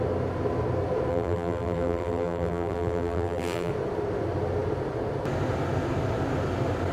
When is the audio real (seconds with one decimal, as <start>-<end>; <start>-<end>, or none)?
0.0-1.1; 3.7-6.9